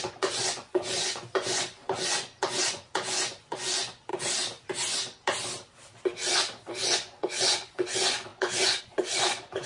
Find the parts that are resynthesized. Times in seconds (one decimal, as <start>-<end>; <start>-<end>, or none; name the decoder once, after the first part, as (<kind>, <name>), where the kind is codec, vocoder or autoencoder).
0.0-4.1 (vocoder, Vocos); 6.7-9.7